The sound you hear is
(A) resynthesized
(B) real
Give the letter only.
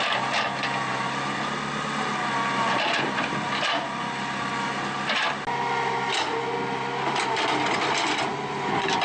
B